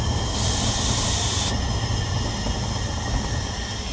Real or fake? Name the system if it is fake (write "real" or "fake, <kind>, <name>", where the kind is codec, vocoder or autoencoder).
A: real